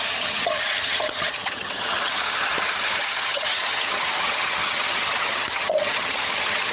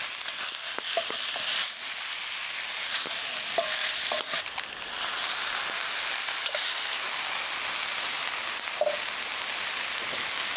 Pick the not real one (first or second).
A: first